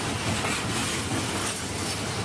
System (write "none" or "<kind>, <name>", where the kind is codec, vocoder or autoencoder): none